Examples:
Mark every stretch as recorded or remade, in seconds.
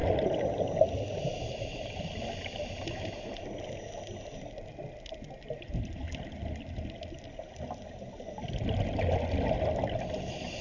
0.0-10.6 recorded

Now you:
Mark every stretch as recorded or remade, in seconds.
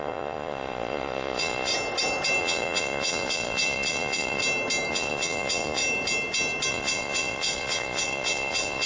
0.0-1.7 remade; 1.7-2.4 recorded; 2.4-4.4 remade; 4.4-4.9 recorded; 4.9-5.8 remade; 5.8-6.7 recorded; 6.7-8.9 remade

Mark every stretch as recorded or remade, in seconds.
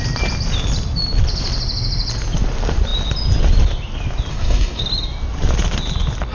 0.0-4.3 recorded; 4.3-4.8 remade; 4.8-6.3 recorded